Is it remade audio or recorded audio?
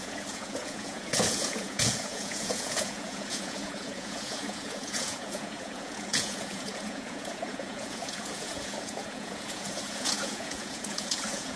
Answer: remade